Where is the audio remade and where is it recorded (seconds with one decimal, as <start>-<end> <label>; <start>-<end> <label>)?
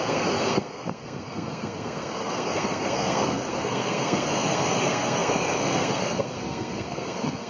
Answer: 0.0-7.5 remade